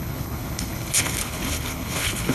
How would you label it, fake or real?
fake